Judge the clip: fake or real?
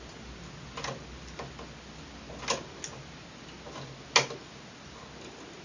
real